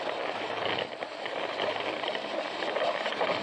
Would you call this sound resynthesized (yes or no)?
no